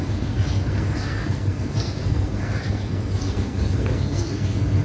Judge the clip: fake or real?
fake